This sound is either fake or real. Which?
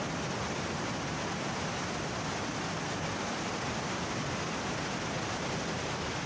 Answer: real